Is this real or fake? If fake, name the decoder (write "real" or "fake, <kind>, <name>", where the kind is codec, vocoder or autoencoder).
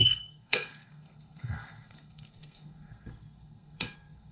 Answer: fake, codec, SNAC